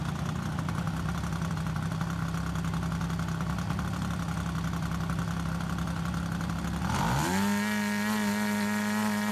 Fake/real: real